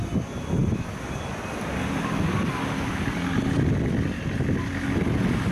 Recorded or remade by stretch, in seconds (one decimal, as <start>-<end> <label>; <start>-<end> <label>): 0.0-5.5 recorded